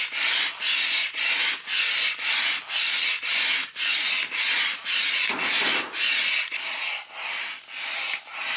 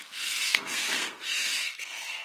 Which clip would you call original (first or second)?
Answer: first